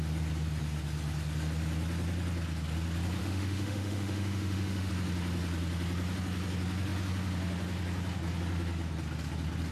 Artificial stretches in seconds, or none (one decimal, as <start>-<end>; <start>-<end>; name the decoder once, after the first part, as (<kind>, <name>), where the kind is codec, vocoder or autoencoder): 3.2-4.9 (autoencoder, DAC-VAE)